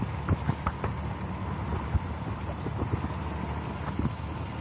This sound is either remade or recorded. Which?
recorded